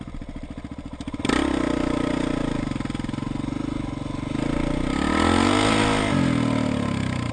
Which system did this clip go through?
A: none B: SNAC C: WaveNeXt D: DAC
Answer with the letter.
A